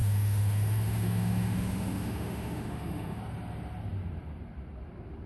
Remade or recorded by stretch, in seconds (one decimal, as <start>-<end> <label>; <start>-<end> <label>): 0.0-3.2 remade; 3.2-5.3 recorded